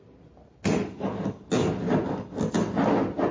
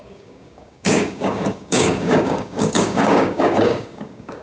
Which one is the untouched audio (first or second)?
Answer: first